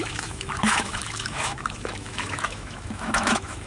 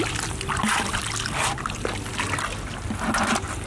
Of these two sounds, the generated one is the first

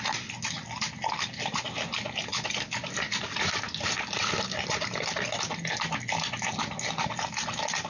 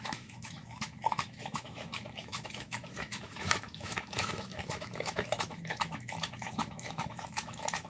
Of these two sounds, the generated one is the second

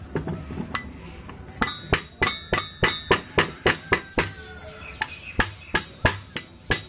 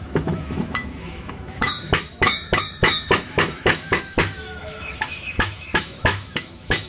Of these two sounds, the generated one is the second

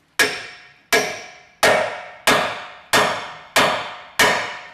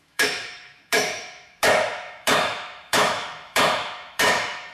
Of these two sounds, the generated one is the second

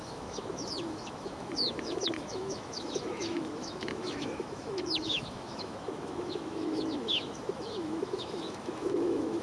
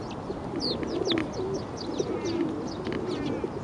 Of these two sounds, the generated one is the first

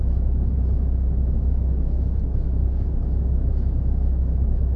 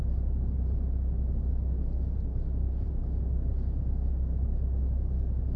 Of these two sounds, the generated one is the first